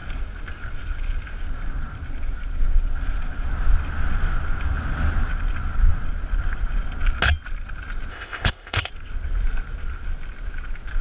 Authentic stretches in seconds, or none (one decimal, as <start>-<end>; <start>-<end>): 0.0-8.1; 8.9-11.0